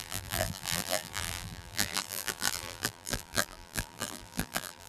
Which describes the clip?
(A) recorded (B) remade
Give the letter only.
B